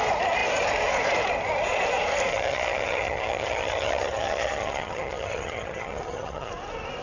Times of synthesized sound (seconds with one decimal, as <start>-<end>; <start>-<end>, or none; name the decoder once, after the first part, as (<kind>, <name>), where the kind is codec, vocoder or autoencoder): 2.3-6.5 (vocoder, HiFi-GAN)